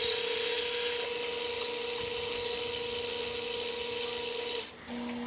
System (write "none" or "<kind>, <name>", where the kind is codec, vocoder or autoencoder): none